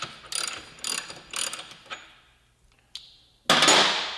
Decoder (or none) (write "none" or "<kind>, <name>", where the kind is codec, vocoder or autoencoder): none